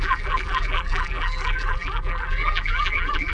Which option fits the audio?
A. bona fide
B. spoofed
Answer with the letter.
B